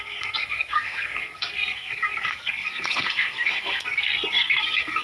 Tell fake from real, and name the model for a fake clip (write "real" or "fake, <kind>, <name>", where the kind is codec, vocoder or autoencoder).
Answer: fake, codec, SNAC